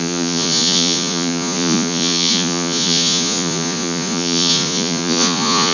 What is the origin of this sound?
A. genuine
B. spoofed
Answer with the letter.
B